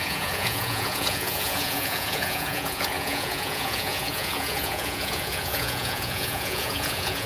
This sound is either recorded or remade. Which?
remade